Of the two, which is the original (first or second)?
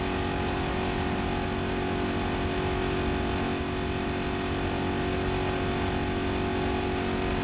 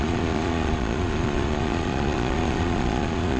first